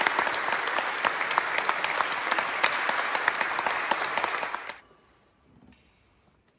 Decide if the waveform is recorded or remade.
recorded